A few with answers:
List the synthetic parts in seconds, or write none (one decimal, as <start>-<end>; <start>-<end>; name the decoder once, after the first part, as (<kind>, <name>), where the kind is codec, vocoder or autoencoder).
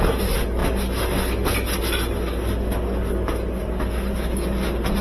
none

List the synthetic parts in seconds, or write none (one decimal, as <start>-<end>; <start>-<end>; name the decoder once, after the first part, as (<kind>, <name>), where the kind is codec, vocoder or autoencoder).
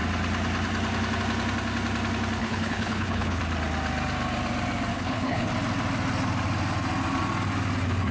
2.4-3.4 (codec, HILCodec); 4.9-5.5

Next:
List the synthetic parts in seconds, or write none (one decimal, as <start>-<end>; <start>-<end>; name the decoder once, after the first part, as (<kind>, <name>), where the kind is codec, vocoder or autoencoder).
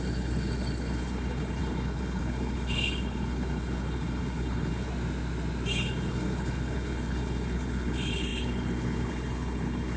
0.0-4.9 (codec, HILCodec); 5.7-10.0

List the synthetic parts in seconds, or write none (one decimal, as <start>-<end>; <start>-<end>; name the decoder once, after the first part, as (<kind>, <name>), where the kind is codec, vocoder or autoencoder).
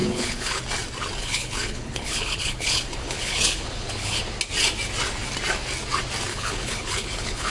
0.0-0.6 (codec, HILCodec); 1.2-4.2; 6.3-7.5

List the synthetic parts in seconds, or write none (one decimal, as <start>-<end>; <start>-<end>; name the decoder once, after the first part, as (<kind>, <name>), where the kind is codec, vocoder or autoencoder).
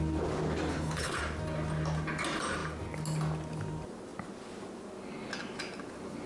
0.7-1.2 (codec, HILCodec)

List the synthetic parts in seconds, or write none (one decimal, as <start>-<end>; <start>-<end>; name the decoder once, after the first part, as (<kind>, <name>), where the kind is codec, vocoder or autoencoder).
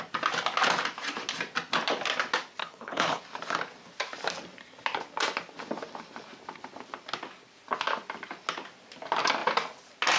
2.6-3.2 (codec, HILCodec)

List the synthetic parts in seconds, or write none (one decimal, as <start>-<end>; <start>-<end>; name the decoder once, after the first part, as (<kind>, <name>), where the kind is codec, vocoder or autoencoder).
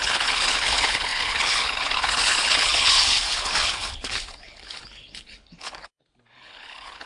0.0-7.1 (codec, HILCodec)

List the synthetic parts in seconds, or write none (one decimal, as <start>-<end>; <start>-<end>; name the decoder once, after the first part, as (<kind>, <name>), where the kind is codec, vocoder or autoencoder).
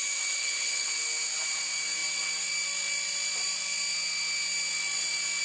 0.4-0.9 (codec, HILCodec)